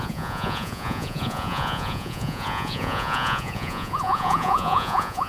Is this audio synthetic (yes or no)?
yes